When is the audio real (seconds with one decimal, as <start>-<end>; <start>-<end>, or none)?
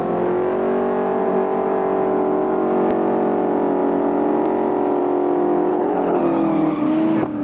0.0-5.7; 6.2-7.4